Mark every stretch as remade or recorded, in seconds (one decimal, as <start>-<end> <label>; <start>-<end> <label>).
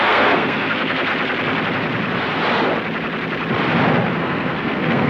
0.0-1.1 remade; 1.1-4.2 recorded; 4.2-5.1 remade